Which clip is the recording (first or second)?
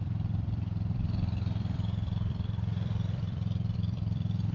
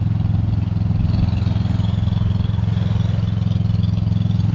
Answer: second